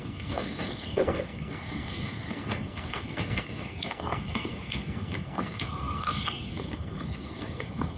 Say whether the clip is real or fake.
fake